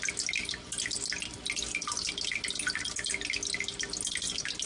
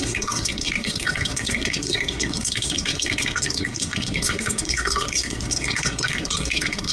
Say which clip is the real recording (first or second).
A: first